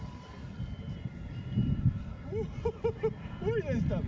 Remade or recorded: recorded